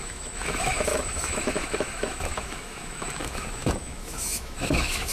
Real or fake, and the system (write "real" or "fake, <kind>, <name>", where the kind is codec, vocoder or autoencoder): fake, autoencoder, DAC-VAE